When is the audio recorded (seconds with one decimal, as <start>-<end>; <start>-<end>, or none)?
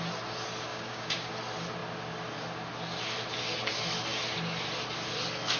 0.0-0.7; 1.3-5.6